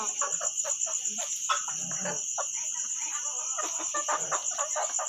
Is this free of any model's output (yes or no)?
yes